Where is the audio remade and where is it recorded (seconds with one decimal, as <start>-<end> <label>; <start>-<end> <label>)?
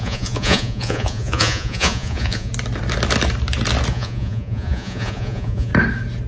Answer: 0.0-2.5 remade; 2.5-3.9 recorded; 3.9-5.7 remade; 5.7-6.3 recorded